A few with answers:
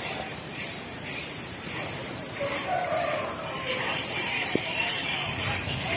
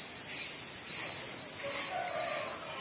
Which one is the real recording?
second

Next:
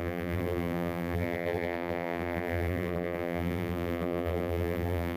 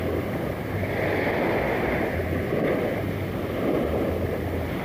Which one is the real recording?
second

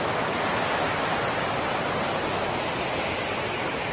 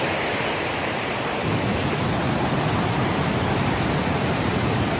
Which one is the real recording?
first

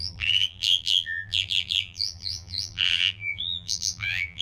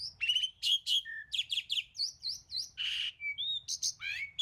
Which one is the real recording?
second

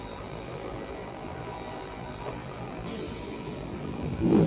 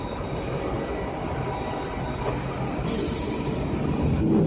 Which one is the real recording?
second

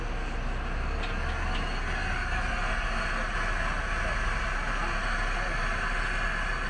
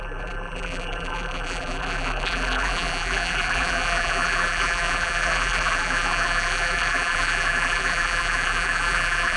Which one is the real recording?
first